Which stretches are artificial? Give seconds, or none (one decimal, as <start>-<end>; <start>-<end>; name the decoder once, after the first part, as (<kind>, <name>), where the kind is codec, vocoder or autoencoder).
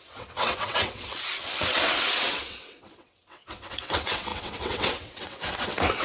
0.0-6.0 (vocoder, WaveNeXt)